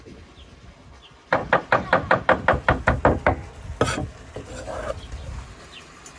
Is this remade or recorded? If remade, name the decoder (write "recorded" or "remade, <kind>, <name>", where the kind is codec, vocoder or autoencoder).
recorded